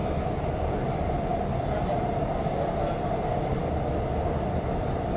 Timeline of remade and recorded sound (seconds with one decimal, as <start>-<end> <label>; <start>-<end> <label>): 0.0-5.2 recorded